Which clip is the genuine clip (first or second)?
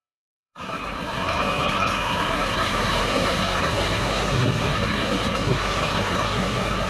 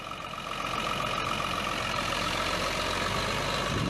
second